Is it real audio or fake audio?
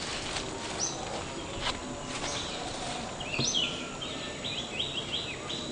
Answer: real